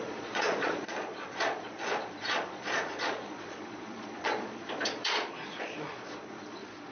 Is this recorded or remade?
remade